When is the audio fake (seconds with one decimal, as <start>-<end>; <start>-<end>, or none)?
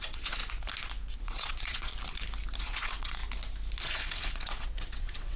0.0-0.4; 1.2-1.9; 2.6-3.2; 3.8-5.4